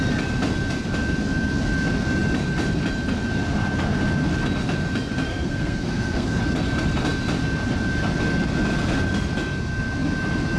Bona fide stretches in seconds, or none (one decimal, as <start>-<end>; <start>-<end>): 0.0-5.3; 6.4-10.6